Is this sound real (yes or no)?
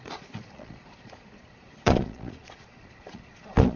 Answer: no